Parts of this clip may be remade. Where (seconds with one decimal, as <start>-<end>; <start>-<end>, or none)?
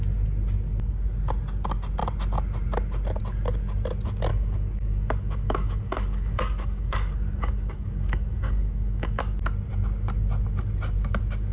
4.3-9.2